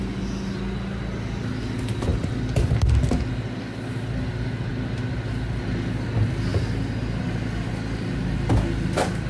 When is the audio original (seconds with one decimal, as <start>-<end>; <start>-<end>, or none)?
0.0-9.3